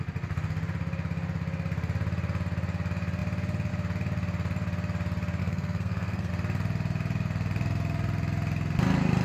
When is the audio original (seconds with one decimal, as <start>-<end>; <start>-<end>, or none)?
0.0-5.4; 6.3-9.2